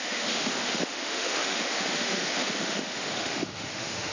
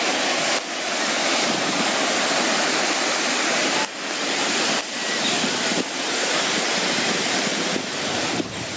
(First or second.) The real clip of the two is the second